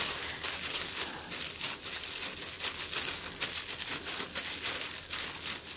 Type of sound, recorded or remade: recorded